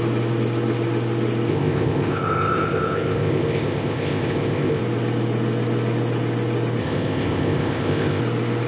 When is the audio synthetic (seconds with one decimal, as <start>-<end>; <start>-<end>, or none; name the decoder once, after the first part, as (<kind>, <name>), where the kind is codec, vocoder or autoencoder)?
1.5-4.8 (codec, ZipCodec); 6.8-8.2